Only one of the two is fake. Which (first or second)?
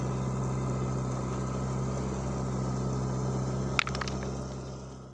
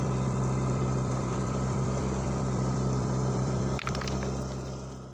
second